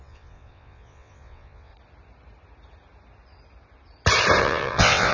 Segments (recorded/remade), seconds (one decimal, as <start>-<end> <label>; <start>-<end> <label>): 0.0-1.7 remade; 1.7-4.4 recorded; 4.4-5.1 remade